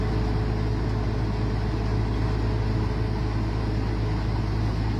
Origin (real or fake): real